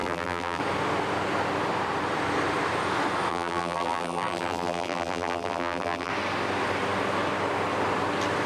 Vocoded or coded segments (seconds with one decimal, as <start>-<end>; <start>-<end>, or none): 0.0-0.6; 3.3-6.1

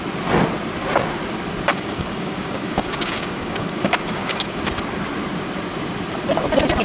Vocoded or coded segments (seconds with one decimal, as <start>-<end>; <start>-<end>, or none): 1.7-4.6

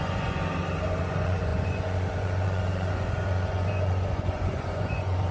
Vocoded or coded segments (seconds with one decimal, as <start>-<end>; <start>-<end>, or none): 0.0-0.4; 1.0-5.3

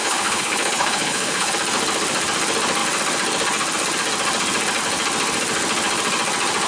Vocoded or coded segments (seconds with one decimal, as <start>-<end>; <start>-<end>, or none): 0.0-1.5

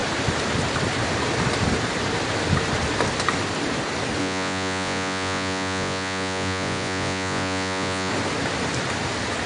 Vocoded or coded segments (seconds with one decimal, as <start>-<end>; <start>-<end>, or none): 4.2-8.1

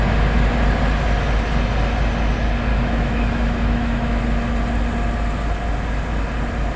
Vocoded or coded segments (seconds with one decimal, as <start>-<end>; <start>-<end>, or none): 2.7-4.2

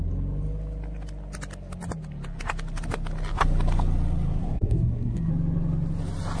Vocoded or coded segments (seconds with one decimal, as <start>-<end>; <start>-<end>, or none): 4.4-5.3

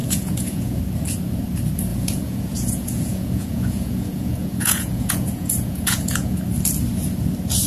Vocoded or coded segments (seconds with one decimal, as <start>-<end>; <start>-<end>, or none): 0.0-0.8; 1.9-6.4